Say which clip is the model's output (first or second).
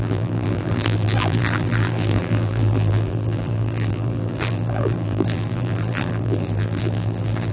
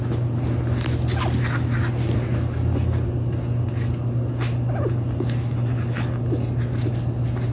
first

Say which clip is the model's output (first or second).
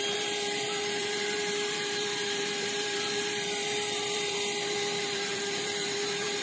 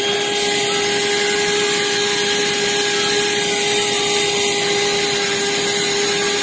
first